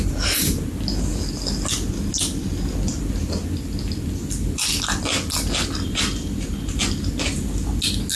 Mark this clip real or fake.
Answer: real